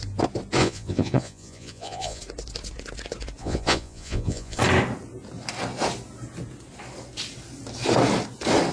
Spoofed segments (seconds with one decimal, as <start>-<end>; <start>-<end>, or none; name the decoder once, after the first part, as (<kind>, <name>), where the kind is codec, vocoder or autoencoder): 0.6-2.2 (vocoder, Vocos); 3.4-4.6